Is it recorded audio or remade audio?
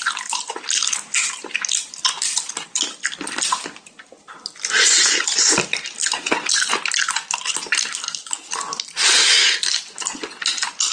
recorded